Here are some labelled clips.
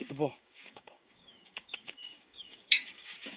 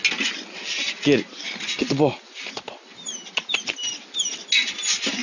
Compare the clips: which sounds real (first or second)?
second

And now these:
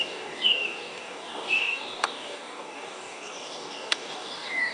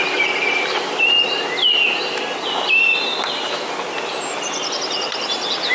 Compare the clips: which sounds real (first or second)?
second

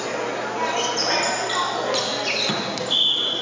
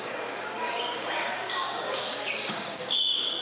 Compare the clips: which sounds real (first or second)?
first